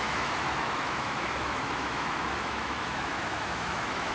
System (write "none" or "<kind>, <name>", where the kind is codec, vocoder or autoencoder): autoencoder, DAC-VAE